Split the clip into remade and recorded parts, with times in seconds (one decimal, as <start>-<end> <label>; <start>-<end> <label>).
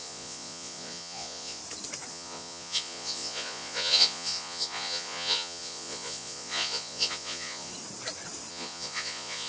0.0-1.6 remade; 1.6-2.1 recorded; 2.1-7.7 remade; 7.7-8.5 recorded; 8.5-9.5 remade